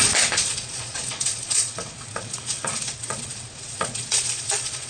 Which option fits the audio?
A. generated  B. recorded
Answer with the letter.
A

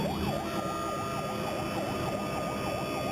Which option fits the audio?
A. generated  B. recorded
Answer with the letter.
B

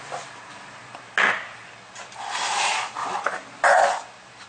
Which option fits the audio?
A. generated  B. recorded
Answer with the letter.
B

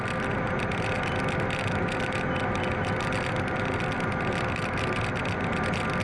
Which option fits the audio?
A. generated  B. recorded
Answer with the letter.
B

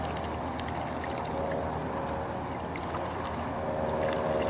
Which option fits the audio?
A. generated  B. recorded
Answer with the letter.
B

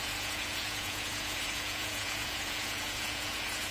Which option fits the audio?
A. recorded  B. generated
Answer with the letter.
B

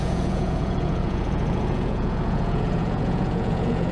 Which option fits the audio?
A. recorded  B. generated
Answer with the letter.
B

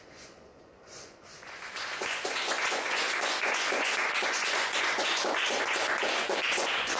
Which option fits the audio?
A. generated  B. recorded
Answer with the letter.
A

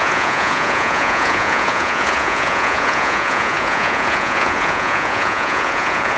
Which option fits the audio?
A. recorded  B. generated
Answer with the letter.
B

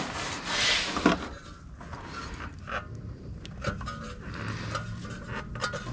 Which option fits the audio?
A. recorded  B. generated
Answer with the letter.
A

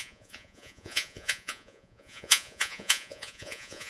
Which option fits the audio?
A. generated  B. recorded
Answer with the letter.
A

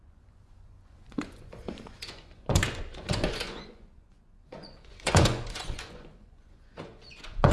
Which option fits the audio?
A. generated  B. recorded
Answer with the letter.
A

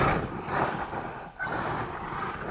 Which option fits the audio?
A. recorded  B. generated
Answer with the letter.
A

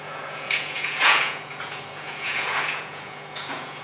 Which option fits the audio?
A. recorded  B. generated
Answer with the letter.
B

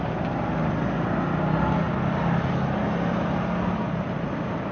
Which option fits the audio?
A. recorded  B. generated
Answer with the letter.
A